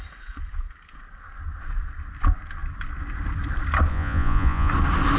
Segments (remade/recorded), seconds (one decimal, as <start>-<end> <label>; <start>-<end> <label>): 0.0-3.9 recorded; 3.9-4.7 remade; 4.7-5.2 recorded

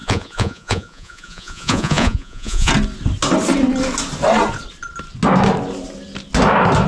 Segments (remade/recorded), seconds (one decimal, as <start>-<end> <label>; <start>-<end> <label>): 0.0-2.7 remade; 2.7-6.9 recorded